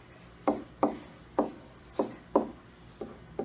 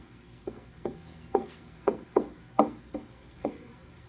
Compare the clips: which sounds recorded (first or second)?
first